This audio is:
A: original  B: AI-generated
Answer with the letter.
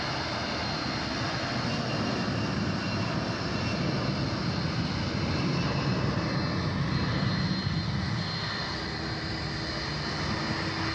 A